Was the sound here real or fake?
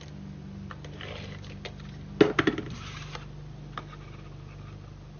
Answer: real